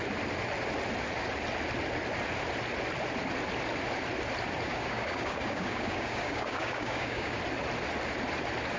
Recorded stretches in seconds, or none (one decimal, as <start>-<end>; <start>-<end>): 0.0-4.7; 7.4-8.8